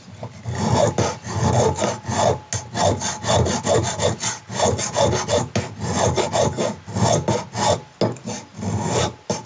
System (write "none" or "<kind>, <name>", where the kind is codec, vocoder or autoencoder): none